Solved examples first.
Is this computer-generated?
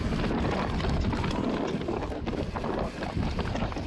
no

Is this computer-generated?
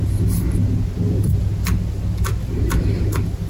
no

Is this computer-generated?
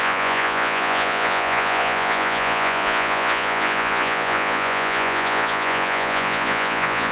yes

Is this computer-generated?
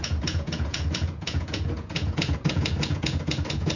yes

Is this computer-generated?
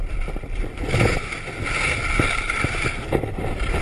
no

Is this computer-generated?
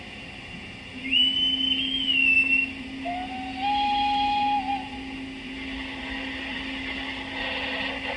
no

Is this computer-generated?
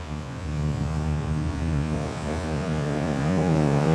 yes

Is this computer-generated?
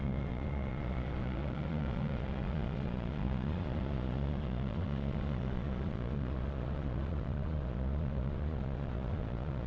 yes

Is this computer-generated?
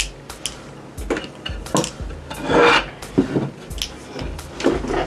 no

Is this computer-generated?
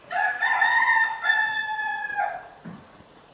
yes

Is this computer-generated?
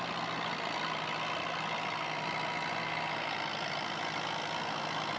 no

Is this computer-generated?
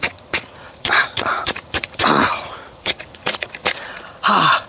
yes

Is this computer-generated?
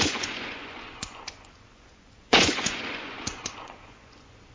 yes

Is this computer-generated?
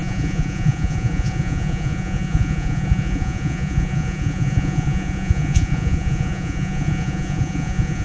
yes